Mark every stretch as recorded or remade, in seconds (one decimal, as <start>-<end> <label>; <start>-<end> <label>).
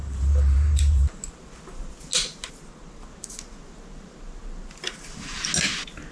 0.0-1.3 remade; 1.3-6.1 recorded